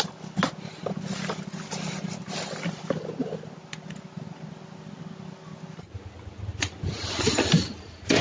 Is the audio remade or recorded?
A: recorded